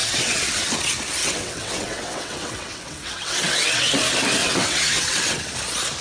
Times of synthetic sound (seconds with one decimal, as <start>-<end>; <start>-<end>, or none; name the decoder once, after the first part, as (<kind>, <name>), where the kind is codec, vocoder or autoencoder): 0.0-0.7 (vocoder, WaveNeXt); 1.2-3.9; 4.4-5.5